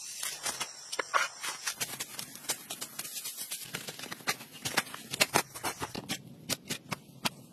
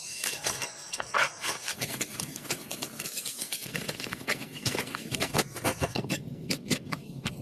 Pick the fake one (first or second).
second